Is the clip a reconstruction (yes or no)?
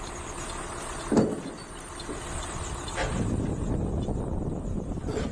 no